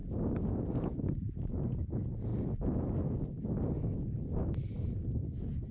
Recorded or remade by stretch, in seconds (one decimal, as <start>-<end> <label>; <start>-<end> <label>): 0.0-0.7 recorded; 0.7-2.3 remade; 2.3-4.4 recorded; 4.4-5.2 remade; 5.2-5.7 recorded